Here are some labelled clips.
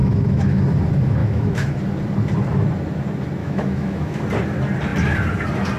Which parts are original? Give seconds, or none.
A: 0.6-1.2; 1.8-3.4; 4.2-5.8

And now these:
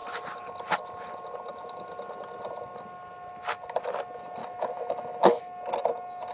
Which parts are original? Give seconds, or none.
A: 0.0-4.4; 5.4-6.3

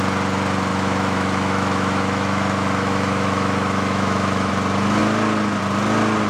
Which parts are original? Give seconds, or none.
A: 0.0-0.7; 4.5-6.3

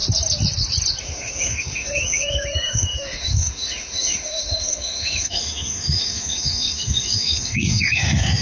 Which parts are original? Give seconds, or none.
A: 0.0-1.0